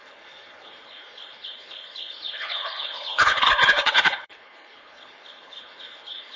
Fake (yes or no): yes